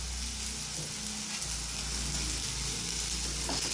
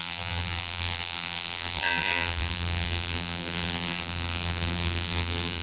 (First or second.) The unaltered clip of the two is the first